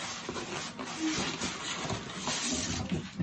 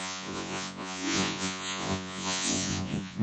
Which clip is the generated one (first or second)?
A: second